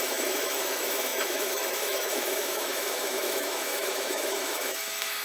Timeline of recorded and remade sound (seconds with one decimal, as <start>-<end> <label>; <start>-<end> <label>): 0.0-5.2 remade